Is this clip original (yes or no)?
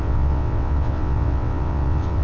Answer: no